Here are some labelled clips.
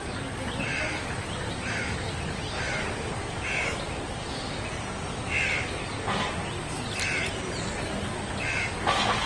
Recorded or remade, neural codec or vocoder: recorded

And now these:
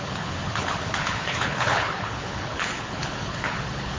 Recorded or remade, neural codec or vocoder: remade, codec, HILCodec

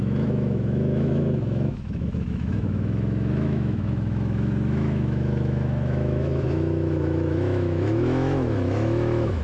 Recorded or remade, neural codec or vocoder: remade, autoencoder, DAC-VAE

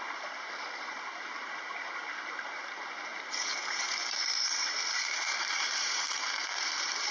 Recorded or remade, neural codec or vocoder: remade, vocoder, BigVGAN v2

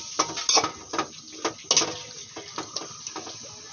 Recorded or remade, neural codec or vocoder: recorded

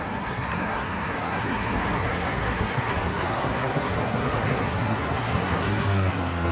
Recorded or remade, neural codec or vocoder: remade, codec, SNAC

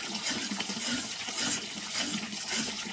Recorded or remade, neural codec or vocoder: remade, vocoder, Vocos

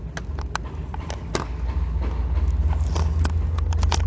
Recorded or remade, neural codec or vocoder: recorded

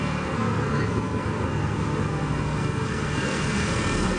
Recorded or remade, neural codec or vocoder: remade, codec, SNAC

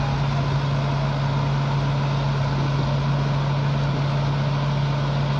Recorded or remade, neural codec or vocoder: recorded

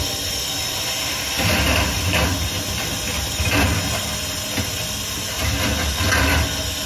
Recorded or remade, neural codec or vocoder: recorded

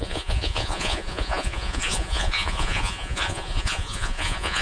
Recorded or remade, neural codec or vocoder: remade, vocoder, Vocos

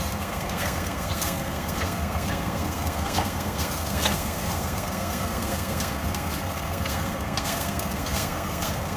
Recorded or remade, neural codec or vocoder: remade, codec, SNAC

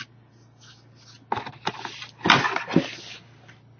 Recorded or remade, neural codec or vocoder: recorded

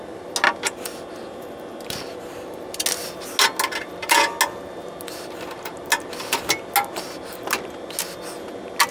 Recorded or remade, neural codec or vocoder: recorded